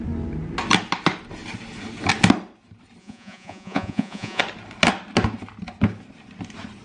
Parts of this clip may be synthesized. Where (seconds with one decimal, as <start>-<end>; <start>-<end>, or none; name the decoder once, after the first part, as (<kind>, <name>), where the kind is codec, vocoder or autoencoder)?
3.0-4.4 (vocoder, Vocos)